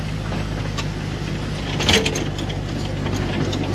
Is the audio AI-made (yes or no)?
no